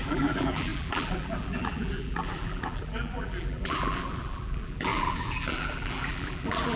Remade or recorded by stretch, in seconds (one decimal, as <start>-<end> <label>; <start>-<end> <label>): 0.0-6.8 remade